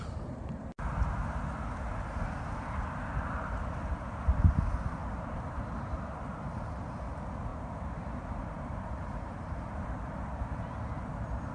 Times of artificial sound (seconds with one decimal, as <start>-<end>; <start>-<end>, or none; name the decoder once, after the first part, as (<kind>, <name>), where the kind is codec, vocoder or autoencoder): 5.0-6.1 (vocoder, BigVGAN v2); 7.5-10.9